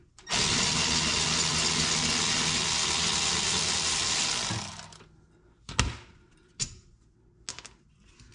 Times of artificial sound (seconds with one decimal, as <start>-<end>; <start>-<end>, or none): none